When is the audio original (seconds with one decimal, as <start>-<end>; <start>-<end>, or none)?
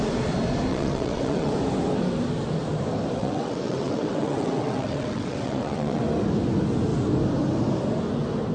0.0-0.7; 1.5-3.2; 6.0-8.5